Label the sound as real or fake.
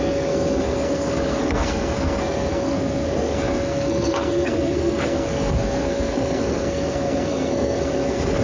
fake